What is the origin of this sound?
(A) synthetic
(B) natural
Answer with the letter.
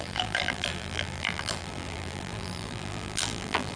A